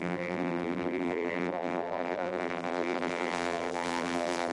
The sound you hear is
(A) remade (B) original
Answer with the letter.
A